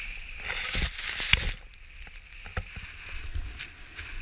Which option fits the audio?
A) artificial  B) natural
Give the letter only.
B